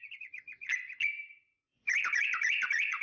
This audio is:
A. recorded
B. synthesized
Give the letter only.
B